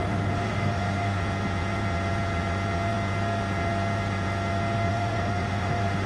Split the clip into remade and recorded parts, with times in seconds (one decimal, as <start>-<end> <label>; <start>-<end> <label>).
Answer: 0.0-1.2 remade; 1.2-4.9 recorded; 4.9-6.1 remade